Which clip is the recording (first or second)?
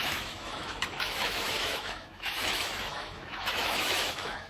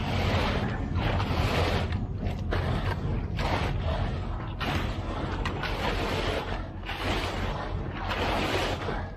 second